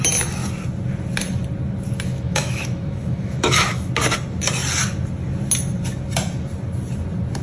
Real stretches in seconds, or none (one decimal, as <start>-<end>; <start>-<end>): 0.0-2.1; 3.9-7.4